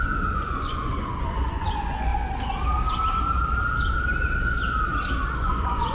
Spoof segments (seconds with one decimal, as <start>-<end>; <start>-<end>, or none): 0.0-2.1; 5.4-5.9